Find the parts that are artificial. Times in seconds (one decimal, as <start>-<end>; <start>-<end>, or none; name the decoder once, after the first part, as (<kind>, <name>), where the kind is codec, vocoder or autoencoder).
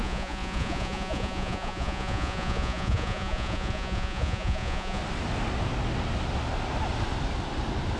0.0-5.0 (vocoder, Vocos)